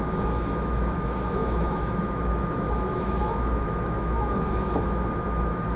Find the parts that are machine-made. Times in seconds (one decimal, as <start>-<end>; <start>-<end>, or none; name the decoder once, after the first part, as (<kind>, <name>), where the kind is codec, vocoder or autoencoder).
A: 0.0-5.8 (autoencoder, DAC-VAE)